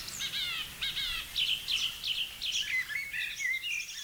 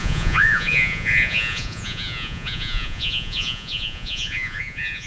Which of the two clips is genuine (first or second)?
first